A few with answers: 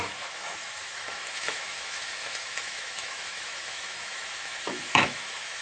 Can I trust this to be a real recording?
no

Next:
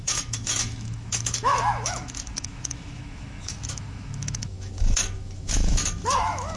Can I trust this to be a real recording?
no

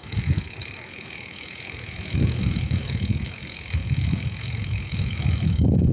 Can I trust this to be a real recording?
no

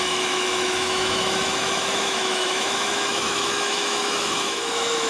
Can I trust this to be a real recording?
no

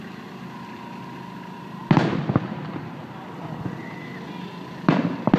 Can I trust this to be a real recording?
yes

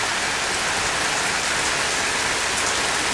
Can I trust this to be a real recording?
yes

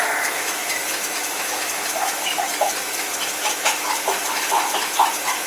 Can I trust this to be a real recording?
no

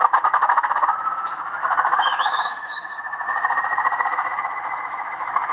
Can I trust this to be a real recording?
no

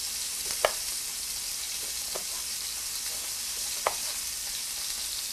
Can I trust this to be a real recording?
yes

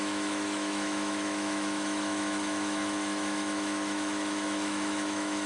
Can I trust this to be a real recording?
no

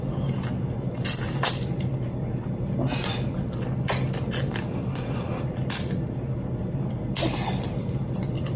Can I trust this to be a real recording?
yes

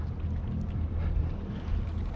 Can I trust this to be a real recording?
yes